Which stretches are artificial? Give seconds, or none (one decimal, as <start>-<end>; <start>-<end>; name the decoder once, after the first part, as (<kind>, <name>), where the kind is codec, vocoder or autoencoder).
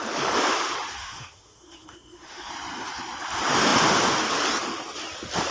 1.0-2.5 (autoencoder, DAC-VAE)